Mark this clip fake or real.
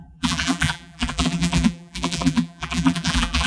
fake